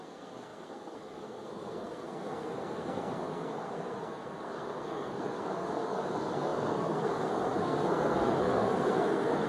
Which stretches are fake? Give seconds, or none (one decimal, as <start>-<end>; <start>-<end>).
0.0-9.5